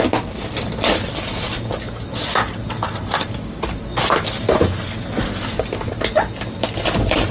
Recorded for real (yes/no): yes